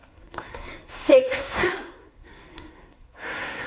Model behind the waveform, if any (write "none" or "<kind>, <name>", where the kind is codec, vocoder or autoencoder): codec, SNAC